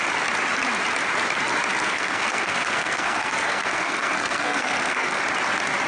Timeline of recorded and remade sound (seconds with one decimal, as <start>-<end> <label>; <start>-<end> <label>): 0.0-1.7 recorded; 1.7-5.2 remade; 5.2-5.9 recorded